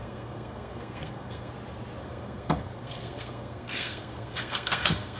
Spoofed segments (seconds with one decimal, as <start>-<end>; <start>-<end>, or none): 0.0-1.5; 2.0-5.2

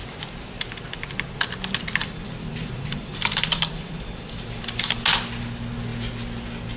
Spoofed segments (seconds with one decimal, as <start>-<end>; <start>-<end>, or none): 2.0-5.0

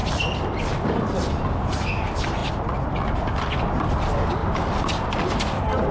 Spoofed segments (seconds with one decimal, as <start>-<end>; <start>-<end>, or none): none

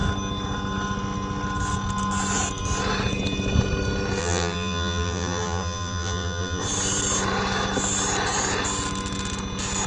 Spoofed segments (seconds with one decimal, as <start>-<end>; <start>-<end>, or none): 4.2-6.6